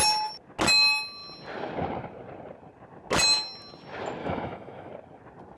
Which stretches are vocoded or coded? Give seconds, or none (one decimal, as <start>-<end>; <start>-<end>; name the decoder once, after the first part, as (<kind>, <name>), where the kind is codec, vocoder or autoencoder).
4.2-4.9 (autoencoder, DAC-VAE)